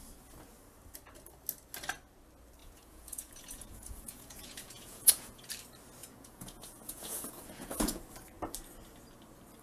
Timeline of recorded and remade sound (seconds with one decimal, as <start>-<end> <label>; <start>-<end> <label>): 0.0-2.6 recorded; 2.6-5.5 remade; 5.5-6.0 recorded; 6.0-8.0 remade; 8.0-9.6 recorded